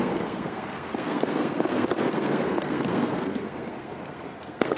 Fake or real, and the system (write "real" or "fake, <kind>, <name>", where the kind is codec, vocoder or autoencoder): fake, codec, SNAC